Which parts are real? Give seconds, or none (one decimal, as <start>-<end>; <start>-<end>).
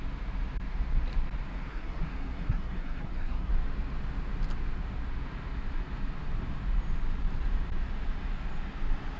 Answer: 0.0-1.7; 3.5-9.2